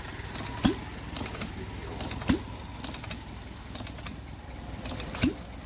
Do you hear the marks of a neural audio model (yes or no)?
no